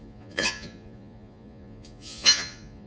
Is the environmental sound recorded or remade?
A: remade